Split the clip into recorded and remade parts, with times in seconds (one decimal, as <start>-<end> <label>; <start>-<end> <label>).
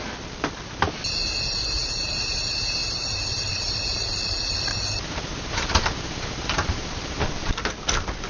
0.0-2.8 recorded; 2.8-7.2 remade; 7.2-8.3 recorded